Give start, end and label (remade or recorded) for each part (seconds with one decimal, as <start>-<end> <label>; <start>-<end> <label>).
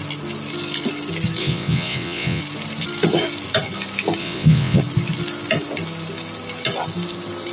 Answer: 0.0-1.4 recorded; 1.4-2.4 remade; 2.4-4.2 recorded; 4.2-4.8 remade; 4.8-7.5 recorded